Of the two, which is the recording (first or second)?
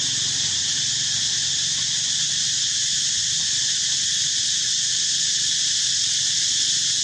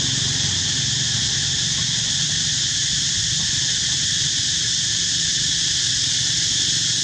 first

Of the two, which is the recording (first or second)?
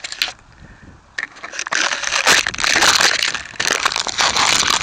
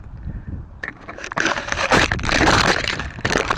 first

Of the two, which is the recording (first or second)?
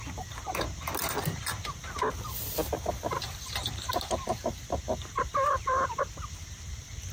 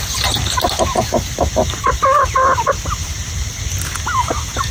second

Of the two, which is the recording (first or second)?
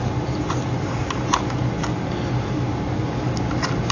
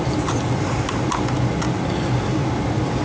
first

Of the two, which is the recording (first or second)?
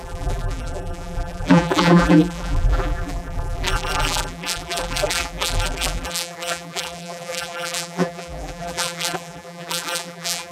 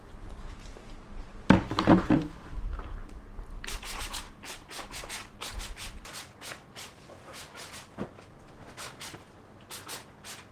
second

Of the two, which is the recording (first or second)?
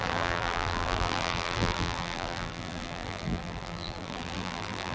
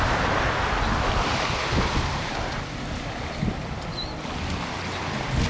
second